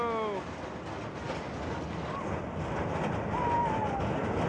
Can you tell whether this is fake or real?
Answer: real